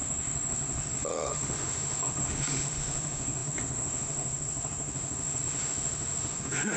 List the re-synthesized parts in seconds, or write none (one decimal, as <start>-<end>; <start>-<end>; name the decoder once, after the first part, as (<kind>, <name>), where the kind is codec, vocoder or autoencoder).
0.0-6.8 (autoencoder, DAC-VAE)